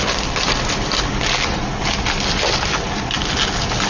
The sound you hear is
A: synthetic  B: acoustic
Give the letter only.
B